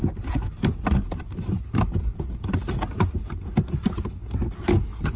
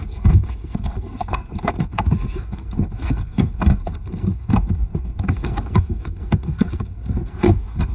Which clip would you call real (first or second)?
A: first